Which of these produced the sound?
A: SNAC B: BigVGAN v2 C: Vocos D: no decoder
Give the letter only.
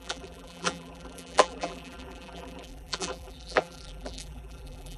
B